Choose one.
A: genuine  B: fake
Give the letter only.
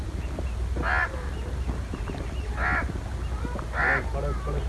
A